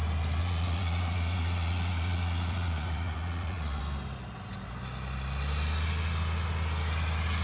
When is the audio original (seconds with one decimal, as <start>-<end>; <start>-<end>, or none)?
0.0-0.4; 3.8-7.4